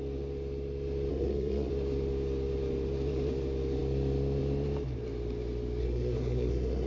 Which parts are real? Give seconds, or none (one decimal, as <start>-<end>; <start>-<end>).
0.0-1.1; 1.7-5.8